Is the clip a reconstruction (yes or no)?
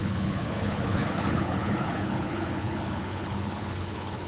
yes